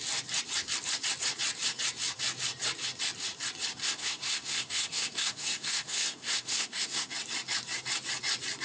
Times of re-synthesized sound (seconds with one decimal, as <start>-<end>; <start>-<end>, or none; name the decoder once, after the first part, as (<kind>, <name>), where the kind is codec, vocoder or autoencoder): 3.8-7.1 (codec, SNAC)